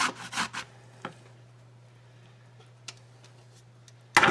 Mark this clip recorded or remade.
recorded